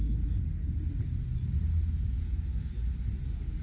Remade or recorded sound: recorded